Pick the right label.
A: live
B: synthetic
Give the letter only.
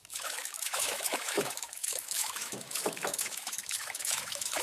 B